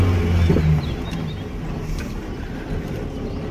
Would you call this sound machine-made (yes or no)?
no